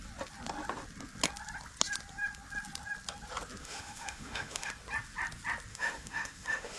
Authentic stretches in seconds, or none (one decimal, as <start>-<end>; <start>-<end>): 0.0-3.6; 4.7-5.7